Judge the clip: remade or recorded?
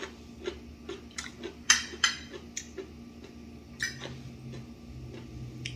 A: recorded